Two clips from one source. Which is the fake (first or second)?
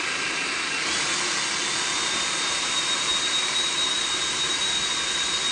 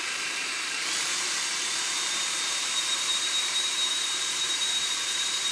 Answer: second